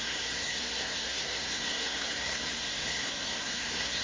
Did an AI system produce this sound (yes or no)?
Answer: yes